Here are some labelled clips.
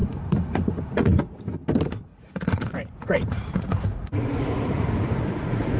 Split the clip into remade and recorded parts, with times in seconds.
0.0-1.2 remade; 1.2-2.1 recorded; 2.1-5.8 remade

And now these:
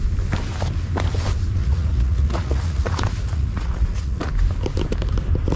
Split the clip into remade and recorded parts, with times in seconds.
0.0-1.6 recorded; 1.6-4.3 remade; 4.3-5.6 recorded

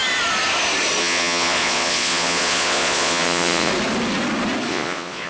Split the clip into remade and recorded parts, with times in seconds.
0.0-1.0 recorded; 1.0-3.7 remade; 3.7-4.7 recorded; 4.7-5.3 remade